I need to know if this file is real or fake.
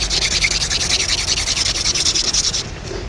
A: real